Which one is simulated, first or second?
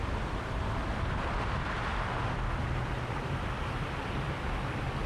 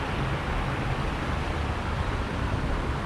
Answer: first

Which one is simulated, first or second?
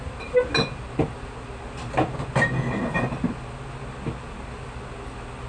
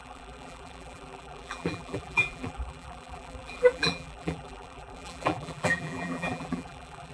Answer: second